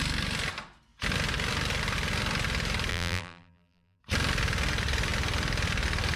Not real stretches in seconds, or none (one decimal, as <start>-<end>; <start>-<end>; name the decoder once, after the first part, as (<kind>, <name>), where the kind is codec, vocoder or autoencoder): 2.9-4.0 (vocoder, BigVGAN v2)